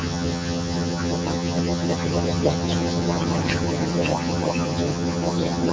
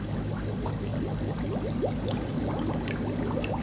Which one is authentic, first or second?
second